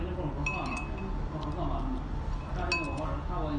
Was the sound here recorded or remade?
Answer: recorded